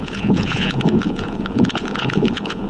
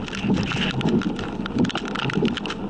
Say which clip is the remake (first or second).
first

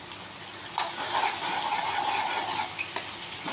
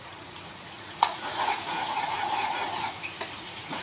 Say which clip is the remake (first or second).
second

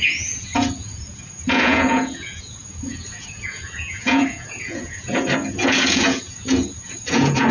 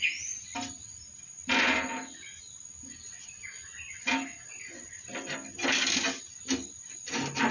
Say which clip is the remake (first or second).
first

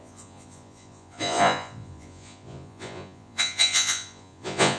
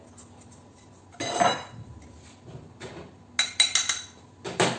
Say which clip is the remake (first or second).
first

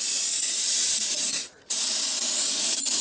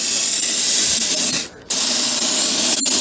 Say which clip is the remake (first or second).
first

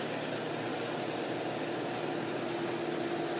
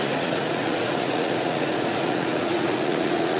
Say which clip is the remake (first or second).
second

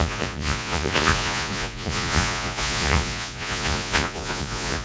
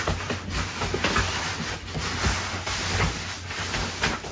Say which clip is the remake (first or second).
first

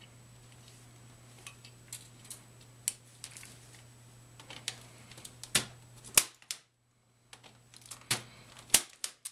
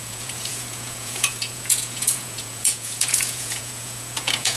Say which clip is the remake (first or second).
second